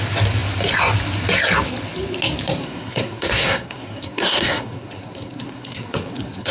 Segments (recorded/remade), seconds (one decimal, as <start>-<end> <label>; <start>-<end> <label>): 0.0-2.6 recorded; 2.6-6.5 remade